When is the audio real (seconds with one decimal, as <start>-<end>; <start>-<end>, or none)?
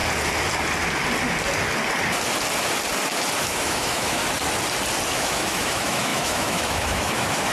0.0-3.4; 4.2-5.1